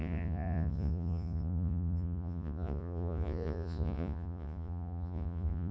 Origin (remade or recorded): remade